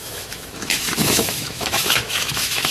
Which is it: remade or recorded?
remade